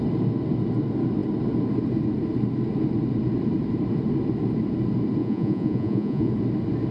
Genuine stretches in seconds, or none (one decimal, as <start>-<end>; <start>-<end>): 0.0-5.2; 6.3-6.9